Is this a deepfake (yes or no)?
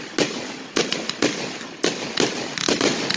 no